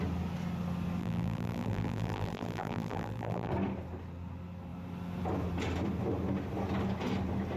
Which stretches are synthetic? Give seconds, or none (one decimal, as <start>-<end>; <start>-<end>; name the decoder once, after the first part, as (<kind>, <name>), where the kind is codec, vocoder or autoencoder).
1.0-3.5 (vocoder, BigVGAN v2)